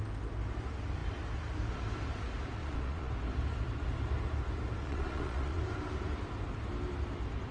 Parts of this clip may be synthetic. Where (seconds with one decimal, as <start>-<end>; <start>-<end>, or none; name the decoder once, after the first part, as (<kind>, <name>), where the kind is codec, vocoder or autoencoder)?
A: 2.6-3.1 (vocoder, Vocos); 4.8-5.6